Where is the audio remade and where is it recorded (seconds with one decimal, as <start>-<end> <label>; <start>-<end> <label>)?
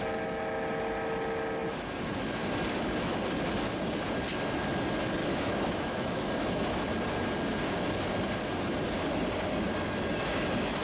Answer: 0.0-5.2 recorded; 5.2-6.3 remade; 6.3-10.8 recorded